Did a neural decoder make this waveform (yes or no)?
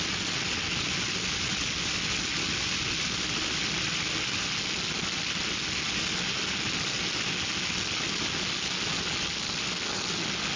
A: no